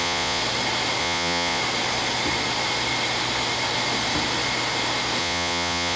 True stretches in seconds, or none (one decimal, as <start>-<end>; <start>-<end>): 0.4-1.0; 1.6-5.2